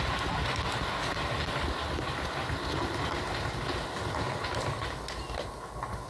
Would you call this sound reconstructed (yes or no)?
no